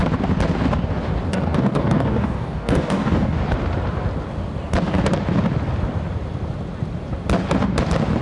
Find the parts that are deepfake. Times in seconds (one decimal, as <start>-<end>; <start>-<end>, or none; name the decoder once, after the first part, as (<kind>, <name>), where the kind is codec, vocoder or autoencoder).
1.3-3.4 (codec, DAC)